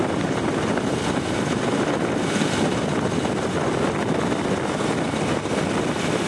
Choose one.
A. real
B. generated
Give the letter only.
A